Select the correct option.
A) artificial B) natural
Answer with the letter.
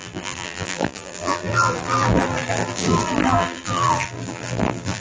A